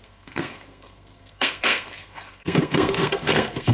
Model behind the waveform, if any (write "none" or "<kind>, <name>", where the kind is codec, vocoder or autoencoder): codec, SNAC